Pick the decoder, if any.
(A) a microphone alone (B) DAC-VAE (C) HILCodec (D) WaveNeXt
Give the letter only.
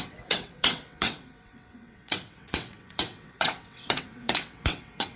D